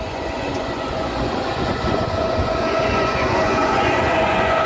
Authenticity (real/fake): fake